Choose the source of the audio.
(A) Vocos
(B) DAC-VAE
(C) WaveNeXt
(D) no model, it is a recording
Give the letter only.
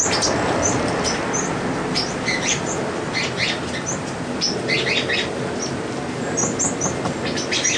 D